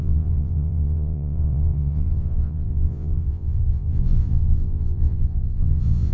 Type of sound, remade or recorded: remade